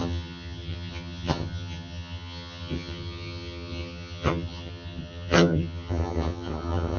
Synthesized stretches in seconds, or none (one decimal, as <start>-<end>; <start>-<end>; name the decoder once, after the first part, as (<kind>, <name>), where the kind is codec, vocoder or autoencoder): 0.0-7.0 (vocoder, HiFi-GAN)